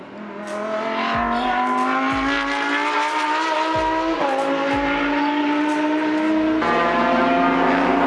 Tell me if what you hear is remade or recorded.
recorded